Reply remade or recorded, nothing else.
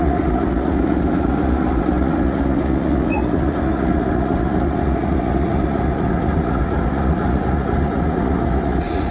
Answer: remade